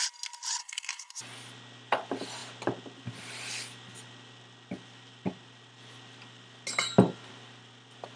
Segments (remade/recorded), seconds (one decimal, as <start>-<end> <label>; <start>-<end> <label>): 0.0-0.6 recorded; 0.6-1.2 remade; 1.2-8.2 recorded

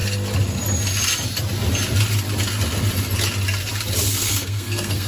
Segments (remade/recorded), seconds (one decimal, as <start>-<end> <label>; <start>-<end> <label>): 0.0-4.2 recorded; 4.2-5.1 remade

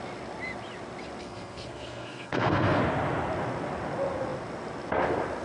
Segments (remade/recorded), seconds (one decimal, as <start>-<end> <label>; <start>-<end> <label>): 0.0-1.2 recorded; 1.2-2.8 remade; 2.8-5.4 recorded

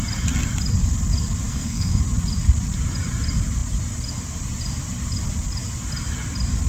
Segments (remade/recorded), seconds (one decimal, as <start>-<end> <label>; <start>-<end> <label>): 0.0-1.5 recorded; 1.5-2.0 remade; 2.0-6.7 recorded

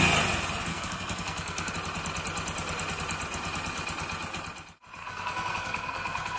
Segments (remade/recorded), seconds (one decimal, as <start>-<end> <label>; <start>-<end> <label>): 0.0-0.7 recorded; 0.7-1.7 remade; 1.7-5.0 recorded; 5.0-6.4 remade